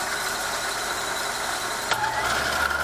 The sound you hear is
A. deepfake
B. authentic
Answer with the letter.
B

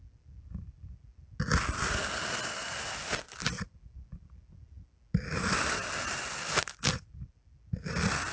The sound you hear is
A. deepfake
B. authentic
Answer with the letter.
B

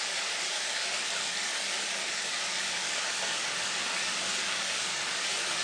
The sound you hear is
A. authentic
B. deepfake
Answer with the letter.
B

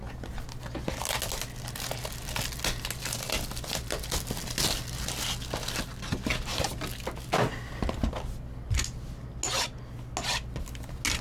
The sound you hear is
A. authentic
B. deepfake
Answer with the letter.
A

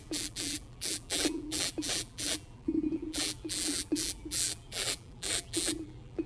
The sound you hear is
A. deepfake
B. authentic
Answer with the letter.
A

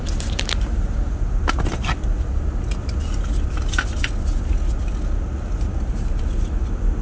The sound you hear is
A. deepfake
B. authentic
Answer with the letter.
B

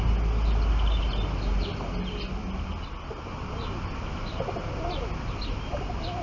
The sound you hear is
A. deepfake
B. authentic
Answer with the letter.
B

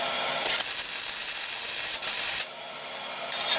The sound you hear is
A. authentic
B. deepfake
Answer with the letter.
A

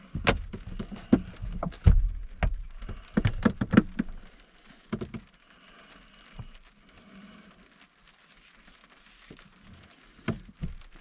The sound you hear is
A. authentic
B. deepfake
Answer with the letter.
A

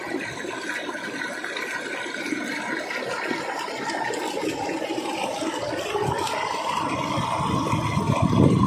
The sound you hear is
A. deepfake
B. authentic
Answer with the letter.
B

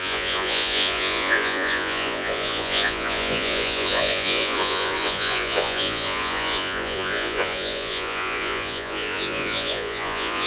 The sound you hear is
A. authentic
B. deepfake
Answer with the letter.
B